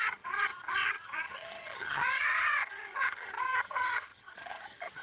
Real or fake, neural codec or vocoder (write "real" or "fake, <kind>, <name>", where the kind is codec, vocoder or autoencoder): fake, vocoder, HiFi-GAN